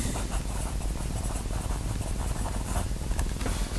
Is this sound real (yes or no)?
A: yes